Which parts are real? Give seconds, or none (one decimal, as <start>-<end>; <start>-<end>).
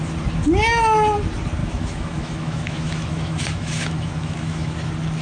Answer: 0.0-1.6; 4.7-5.2